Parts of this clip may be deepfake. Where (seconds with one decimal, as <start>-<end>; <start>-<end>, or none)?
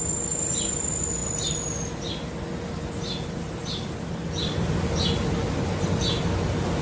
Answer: none